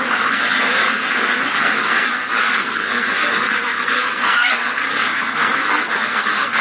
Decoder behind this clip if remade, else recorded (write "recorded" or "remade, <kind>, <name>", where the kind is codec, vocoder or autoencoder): remade, codec, SNAC